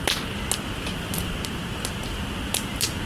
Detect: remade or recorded recorded